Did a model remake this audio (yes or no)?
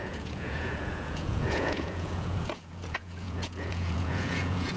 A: yes